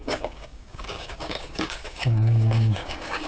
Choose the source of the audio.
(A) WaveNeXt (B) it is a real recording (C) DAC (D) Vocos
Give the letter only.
C